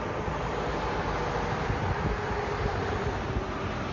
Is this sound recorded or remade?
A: recorded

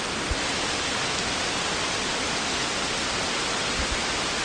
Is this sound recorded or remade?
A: recorded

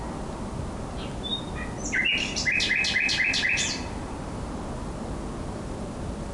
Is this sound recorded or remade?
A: recorded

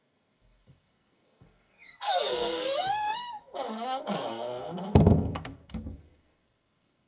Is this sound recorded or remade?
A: remade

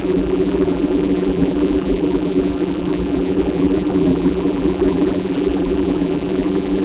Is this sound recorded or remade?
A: remade